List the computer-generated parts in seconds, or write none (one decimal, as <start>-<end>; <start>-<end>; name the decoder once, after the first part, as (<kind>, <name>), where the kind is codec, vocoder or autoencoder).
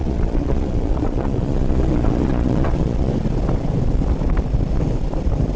0.0-3.1 (vocoder, Vocos)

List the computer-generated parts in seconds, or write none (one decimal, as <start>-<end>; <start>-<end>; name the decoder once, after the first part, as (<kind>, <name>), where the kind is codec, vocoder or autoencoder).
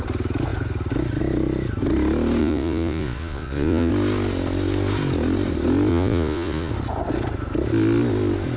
2.4-3.9 (vocoder, Vocos); 5.9-6.7